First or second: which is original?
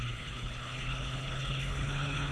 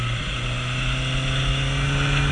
second